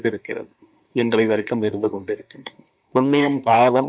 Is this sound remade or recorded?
remade